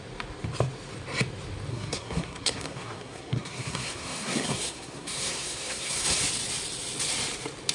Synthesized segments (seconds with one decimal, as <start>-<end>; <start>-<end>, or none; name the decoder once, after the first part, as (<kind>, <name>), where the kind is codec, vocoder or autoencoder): 1.7-6.2 (codec, SNAC)